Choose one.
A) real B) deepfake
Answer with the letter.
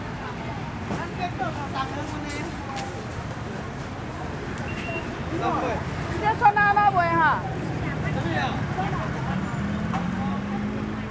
A